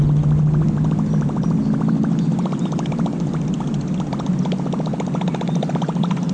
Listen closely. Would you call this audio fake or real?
real